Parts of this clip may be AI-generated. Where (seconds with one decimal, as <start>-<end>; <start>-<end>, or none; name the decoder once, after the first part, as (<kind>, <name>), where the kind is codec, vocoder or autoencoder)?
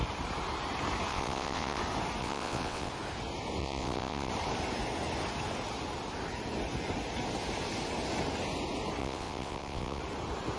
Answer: 1.1-1.8 (vocoder, WaveNeXt); 2.2-2.9; 3.6-4.3; 9.0-10.0